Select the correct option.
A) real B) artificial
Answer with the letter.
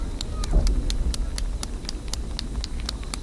A